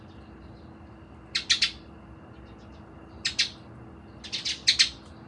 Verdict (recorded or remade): recorded